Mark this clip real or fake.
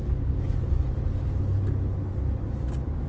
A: real